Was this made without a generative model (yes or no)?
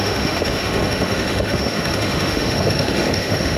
no